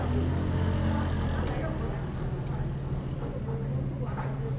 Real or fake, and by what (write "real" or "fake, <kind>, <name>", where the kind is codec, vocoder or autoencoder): real